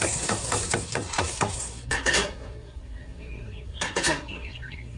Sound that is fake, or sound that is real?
fake